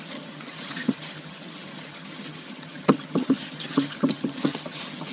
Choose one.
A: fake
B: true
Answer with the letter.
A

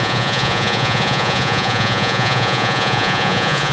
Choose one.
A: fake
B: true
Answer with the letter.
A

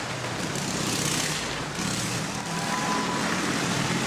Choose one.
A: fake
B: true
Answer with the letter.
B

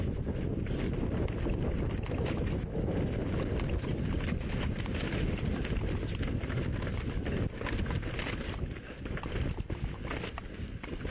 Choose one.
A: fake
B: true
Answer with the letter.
B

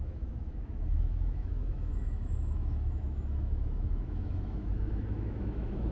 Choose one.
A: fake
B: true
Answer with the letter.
A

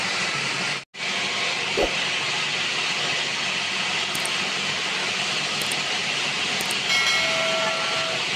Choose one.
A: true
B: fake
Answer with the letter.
A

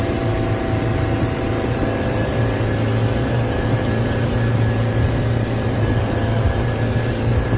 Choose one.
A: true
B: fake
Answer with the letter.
B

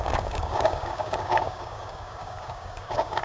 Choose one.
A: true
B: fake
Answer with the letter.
B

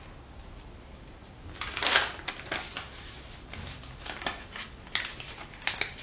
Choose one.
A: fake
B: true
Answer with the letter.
B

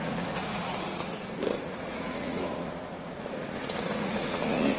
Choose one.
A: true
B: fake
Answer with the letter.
B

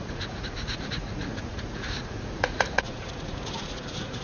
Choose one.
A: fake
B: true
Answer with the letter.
A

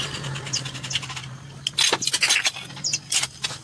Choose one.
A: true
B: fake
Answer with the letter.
A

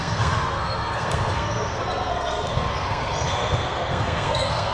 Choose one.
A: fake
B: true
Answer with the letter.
A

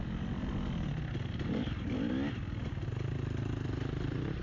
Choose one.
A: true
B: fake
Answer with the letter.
A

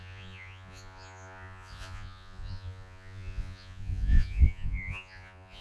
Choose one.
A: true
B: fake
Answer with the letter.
B